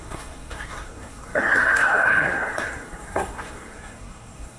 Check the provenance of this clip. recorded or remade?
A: remade